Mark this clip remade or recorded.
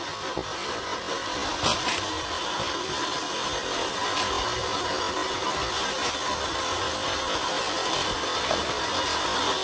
recorded